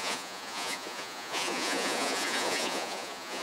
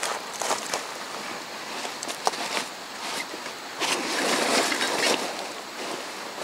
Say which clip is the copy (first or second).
first